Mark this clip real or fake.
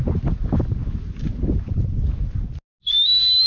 real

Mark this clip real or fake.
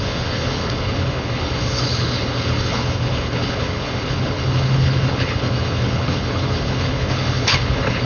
fake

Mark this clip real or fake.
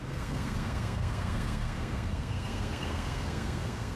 fake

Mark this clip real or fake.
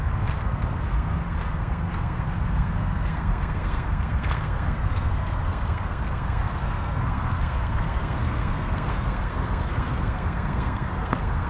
fake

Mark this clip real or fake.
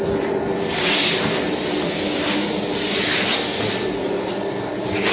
real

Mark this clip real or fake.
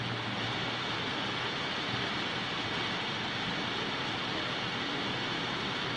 real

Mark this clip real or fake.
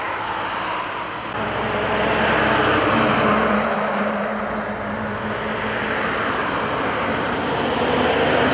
real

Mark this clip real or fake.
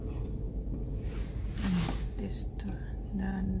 real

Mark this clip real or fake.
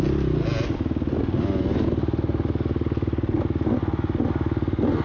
real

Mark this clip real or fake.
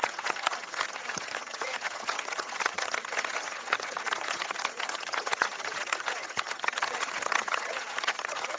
fake